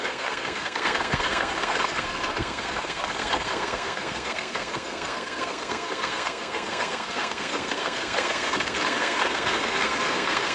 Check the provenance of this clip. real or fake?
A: fake